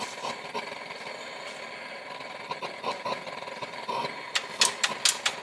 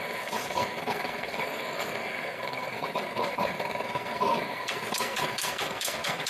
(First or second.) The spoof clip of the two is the second